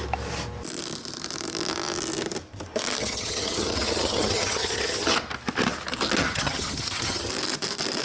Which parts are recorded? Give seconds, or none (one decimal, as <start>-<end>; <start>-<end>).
0.0-3.0; 5.1-6.2; 7.3-8.0